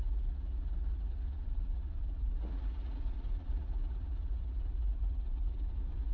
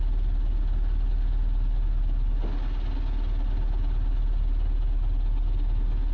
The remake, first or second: first